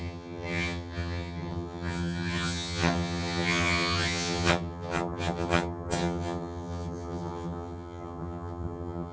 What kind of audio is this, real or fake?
fake